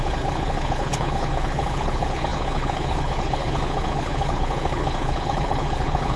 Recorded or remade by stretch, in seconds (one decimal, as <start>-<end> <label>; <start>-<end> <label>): 0.0-6.2 remade